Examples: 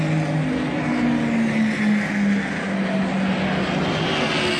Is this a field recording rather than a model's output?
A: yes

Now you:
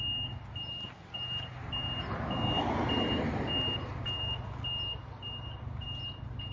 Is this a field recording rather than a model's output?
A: yes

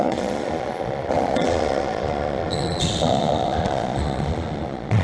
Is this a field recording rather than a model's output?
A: no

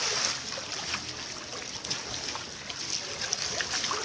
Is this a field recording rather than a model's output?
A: yes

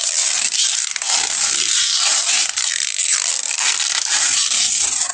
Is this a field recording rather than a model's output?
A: no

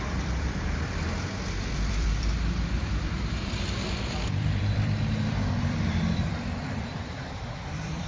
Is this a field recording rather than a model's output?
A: no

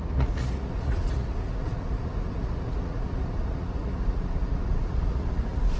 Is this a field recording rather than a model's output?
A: no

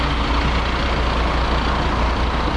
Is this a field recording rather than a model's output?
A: yes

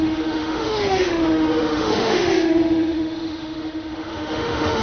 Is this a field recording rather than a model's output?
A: no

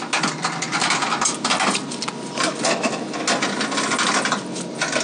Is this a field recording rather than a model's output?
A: yes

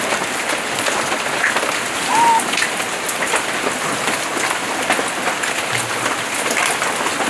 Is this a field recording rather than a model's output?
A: yes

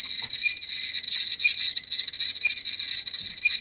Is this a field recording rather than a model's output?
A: no